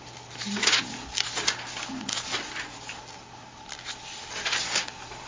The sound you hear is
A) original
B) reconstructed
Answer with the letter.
A